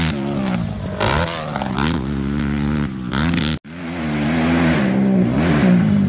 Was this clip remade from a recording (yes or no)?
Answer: no